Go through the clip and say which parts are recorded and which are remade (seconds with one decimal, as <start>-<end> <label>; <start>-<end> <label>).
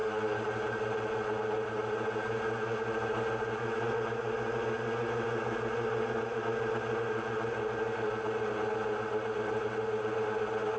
0.0-10.8 recorded